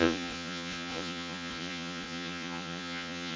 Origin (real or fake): fake